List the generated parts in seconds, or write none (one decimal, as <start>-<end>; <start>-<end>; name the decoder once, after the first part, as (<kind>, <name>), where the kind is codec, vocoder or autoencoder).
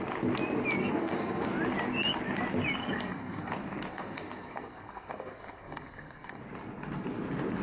0.8-1.5 (codec, SNAC); 2.8-3.5; 3.9-6.4